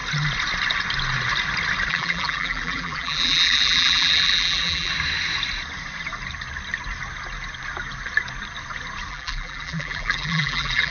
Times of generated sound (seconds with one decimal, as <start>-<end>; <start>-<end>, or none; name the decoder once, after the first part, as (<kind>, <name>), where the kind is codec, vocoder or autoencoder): 1.9-4.9 (vocoder, BigVGAN v2); 9.1-10.9